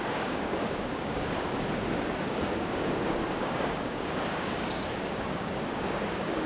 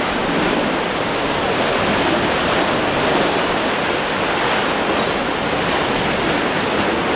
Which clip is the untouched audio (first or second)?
second